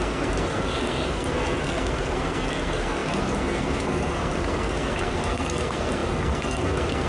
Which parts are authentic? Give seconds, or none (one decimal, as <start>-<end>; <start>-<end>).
none